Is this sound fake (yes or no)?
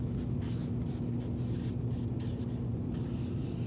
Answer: yes